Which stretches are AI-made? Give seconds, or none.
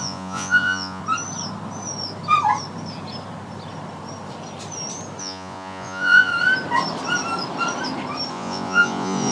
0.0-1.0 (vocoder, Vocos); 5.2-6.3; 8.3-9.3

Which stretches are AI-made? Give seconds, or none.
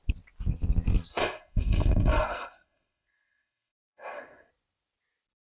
1.1-4.5 (codec, SNAC)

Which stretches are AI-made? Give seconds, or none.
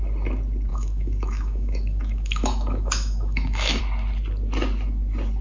0.7-3.8 (autoencoder, DAC-VAE)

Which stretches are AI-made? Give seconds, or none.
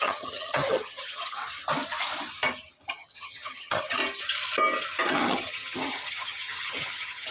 0.0-1.4 (vocoder, HiFi-GAN); 2.9-4.0; 5.1-7.3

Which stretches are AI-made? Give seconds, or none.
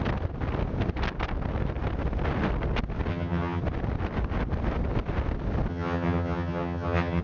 3.1-3.6 (vocoder, HiFi-GAN); 5.7-7.2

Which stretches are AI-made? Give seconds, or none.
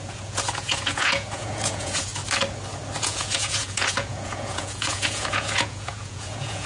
0.0-2.1 (vocoder, Vocos); 3.0-6.7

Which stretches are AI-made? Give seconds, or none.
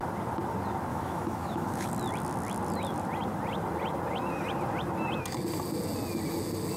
0.9-1.9 (autoencoder, DAC-VAE)